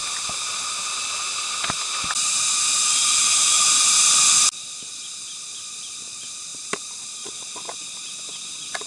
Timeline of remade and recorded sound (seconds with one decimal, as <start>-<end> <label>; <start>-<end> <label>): 0.0-6.5 recorded; 6.5-7.3 remade; 7.3-8.9 recorded